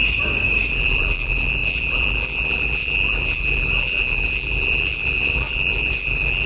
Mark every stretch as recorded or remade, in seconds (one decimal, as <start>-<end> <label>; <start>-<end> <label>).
0.0-0.7 recorded; 0.7-6.5 remade